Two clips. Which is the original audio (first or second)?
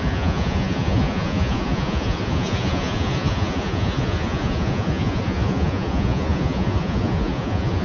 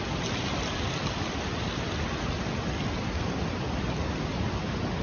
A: second